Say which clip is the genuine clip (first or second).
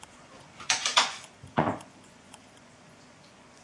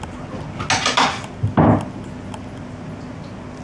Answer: second